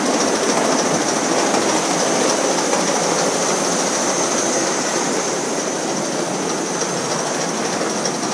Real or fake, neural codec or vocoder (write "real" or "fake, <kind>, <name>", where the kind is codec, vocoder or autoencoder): real